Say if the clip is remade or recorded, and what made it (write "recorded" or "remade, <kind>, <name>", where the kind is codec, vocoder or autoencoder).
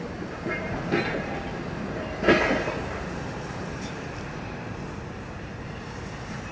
remade, vocoder, BigVGAN v2